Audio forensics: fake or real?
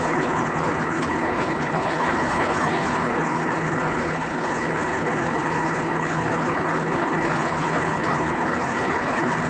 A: fake